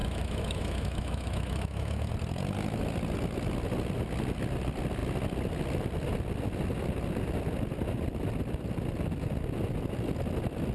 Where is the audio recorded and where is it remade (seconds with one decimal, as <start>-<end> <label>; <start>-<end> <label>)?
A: 0.0-2.1 remade; 2.1-10.7 recorded